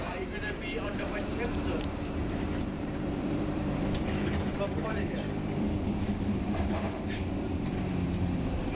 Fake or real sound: fake